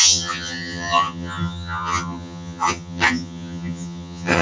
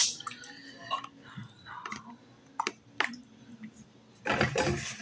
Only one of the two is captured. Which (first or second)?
second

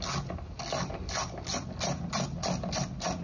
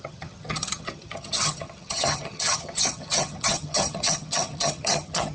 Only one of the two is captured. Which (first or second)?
first